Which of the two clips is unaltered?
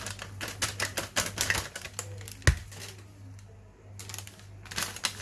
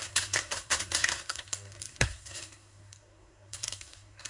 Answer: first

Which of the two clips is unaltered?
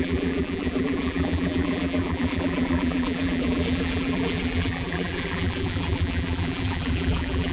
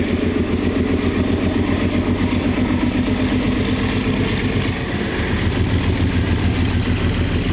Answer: second